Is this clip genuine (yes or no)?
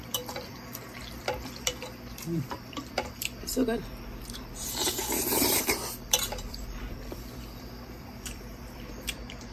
no